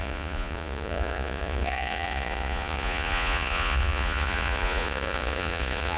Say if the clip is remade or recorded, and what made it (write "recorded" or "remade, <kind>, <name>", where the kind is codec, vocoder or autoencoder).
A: remade, vocoder, Vocos